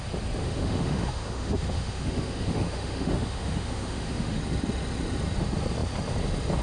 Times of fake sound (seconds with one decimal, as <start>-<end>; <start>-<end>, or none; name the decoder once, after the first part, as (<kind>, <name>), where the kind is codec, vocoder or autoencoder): 0.4-4.4 (autoencoder, DAC-VAE)